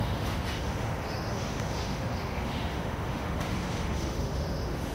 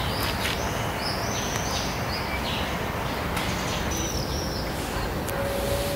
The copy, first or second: first